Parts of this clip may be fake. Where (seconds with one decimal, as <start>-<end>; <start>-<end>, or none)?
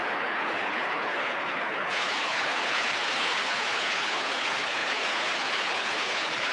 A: 0.0-6.5